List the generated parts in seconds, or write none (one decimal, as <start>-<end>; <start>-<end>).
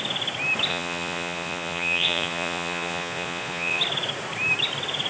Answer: 0.7-3.8